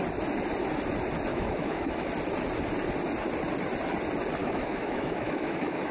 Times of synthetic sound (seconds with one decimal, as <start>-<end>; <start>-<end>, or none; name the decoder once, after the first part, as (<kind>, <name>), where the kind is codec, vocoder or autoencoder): 1.3-2.1 (autoencoder, DAC-VAE); 4.4-5.9